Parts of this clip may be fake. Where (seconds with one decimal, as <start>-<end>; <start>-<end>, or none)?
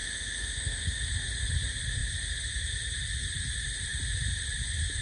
0.0-1.1